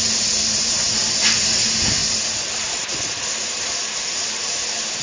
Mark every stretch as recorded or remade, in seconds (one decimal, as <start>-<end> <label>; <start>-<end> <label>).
0.0-2.0 recorded; 2.0-3.1 remade; 3.1-5.0 recorded